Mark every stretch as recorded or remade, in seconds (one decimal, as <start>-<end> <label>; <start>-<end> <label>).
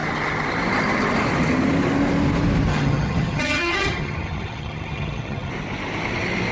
0.0-2.7 recorded; 2.7-5.5 remade; 5.5-6.5 recorded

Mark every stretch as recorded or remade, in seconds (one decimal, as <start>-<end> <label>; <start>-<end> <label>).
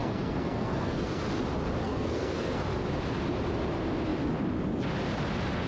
0.0-1.2 remade; 1.2-1.8 recorded; 1.8-2.6 remade; 2.6-5.7 recorded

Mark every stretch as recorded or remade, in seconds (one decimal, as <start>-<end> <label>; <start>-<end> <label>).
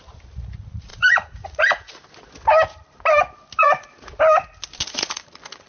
0.0-0.9 recorded; 0.9-1.9 remade; 1.9-3.6 recorded; 3.6-4.2 remade; 4.2-4.8 recorded; 4.8-5.7 remade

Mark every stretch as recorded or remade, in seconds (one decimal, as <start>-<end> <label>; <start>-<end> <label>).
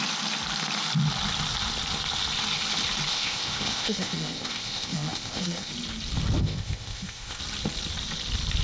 0.0-3.1 recorded; 3.1-5.7 remade; 5.7-6.4 recorded; 6.4-7.4 remade; 7.4-8.6 recorded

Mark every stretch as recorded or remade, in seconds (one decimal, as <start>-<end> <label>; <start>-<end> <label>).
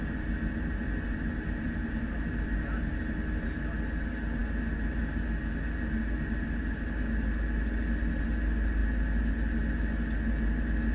0.0-10.9 recorded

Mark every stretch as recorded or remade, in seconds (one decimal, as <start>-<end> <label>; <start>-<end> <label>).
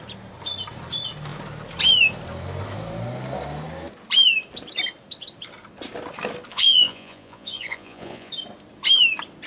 0.0-6.5 recorded; 6.5-8.3 remade; 8.3-9.5 recorded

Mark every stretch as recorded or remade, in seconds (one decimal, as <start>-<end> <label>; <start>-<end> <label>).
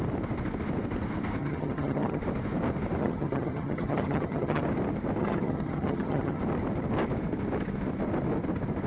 0.0-1.4 recorded; 1.4-2.2 remade; 2.2-3.0 recorded; 3.0-4.6 remade; 4.6-5.2 recorded; 5.2-6.4 remade; 6.4-8.9 recorded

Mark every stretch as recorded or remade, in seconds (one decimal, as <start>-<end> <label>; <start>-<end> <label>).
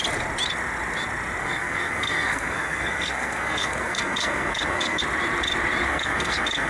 0.0-1.4 recorded; 1.4-5.0 remade; 5.0-5.9 recorded; 5.9-6.7 remade